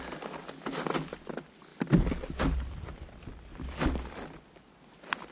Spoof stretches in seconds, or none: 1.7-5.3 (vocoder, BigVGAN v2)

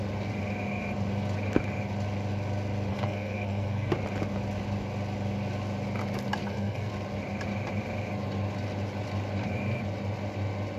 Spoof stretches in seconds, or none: 2.9-3.9 (codec, SNAC); 6.4-6.9

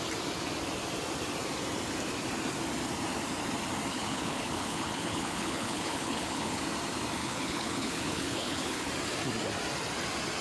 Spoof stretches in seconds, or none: 3.9-6.6 (codec, HILCodec); 7.2-8.9

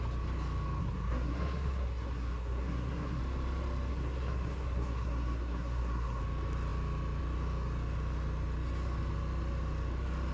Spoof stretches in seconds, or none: 0.8-3.2 (codec, SNAC); 3.9-6.2

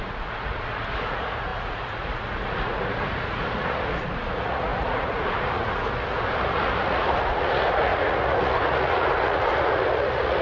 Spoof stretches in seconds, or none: 0.0-10.4 (vocoder, Vocos)